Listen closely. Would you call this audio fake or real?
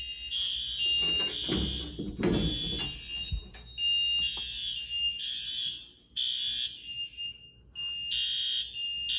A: real